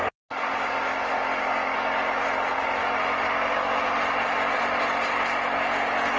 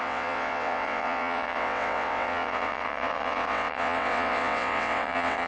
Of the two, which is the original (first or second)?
first